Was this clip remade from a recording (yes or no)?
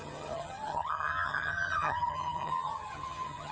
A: yes